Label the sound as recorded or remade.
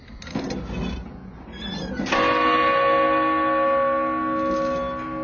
recorded